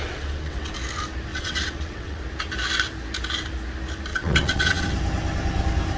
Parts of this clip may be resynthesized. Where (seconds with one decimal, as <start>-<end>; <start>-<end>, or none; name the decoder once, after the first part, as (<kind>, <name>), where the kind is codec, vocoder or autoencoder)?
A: 0.0-0.7 (vocoder, WaveNeXt); 1.3-2.2; 4.1-4.8